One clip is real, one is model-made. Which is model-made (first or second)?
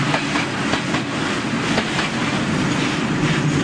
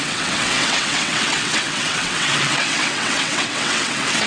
second